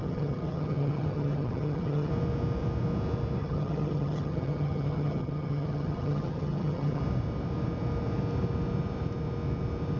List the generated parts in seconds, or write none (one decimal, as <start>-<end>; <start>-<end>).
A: 0.0-2.1; 3.4-7.0